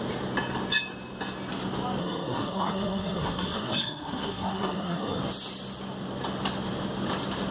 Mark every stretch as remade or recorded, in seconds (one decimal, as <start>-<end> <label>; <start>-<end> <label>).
0.0-2.0 recorded; 2.0-5.2 remade; 5.2-7.5 recorded